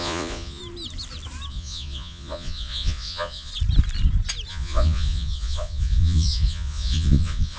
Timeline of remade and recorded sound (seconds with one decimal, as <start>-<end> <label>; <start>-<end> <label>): 0.0-0.6 remade; 0.6-1.5 recorded; 1.5-3.5 remade; 3.5-4.5 recorded; 4.5-7.6 remade